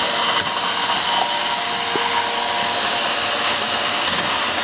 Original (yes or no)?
yes